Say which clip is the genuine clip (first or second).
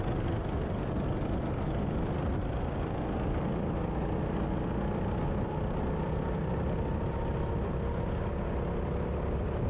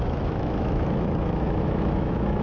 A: first